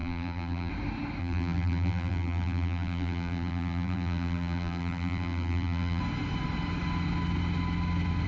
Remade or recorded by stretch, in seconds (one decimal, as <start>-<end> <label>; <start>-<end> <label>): 0.0-0.7 remade; 0.7-1.2 recorded; 1.2-6.0 remade; 6.0-8.3 recorded